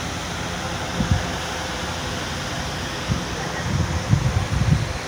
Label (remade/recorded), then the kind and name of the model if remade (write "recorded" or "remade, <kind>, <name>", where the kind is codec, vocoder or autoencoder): recorded